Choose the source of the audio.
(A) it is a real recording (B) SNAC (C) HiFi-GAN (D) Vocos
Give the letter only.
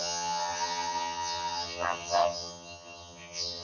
C